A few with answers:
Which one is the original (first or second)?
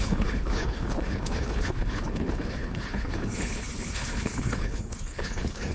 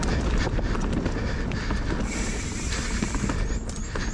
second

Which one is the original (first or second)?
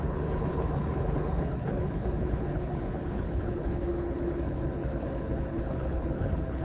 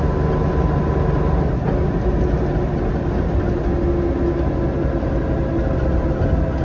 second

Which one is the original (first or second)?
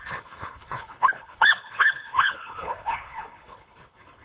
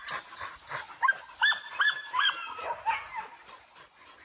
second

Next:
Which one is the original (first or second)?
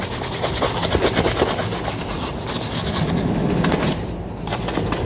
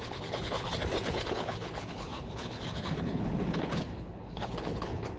first